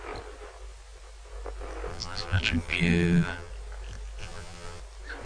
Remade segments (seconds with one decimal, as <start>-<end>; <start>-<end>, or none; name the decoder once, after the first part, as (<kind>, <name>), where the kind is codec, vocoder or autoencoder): 1.9-3.5 (vocoder, BigVGAN v2); 4.2-4.8